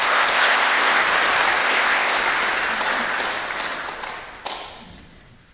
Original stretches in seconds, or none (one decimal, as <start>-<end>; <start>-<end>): 1.0-1.6; 2.2-5.5